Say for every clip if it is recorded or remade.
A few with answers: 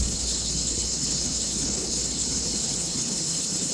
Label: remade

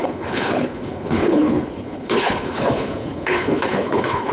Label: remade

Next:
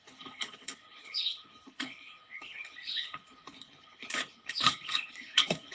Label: remade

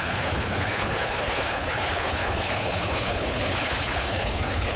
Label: remade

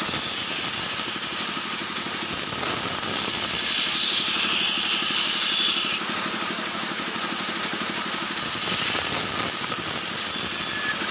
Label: recorded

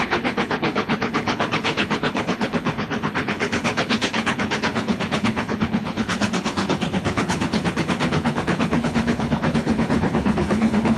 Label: remade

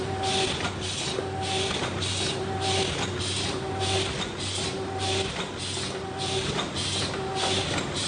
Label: recorded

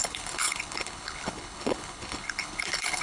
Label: remade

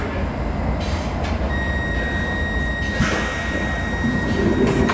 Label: recorded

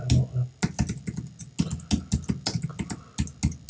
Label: recorded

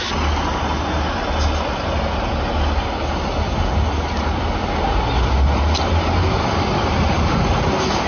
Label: recorded